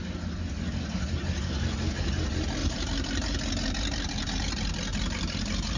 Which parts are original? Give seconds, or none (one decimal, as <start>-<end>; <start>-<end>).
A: 0.0-2.6; 4.4-4.9